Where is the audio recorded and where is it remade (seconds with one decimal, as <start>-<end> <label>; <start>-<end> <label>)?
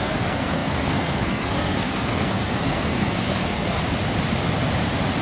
0.0-3.8 remade; 3.8-5.2 recorded